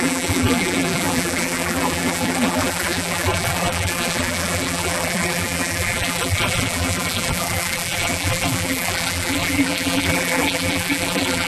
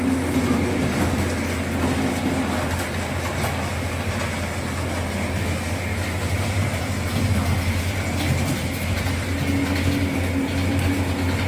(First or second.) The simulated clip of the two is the first